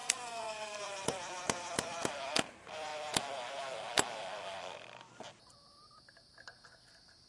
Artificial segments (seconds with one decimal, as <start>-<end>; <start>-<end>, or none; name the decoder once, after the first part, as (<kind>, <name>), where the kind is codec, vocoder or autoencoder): 0.0-0.8 (codec, SNAC)